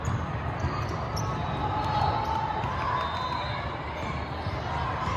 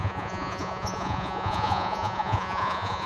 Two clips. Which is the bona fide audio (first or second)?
first